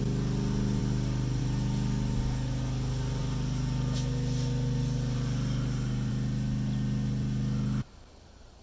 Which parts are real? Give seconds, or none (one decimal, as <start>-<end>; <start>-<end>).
0.0-8.6